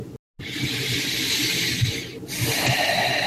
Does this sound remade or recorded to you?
recorded